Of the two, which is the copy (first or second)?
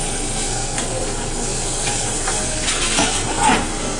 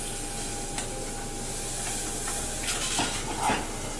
first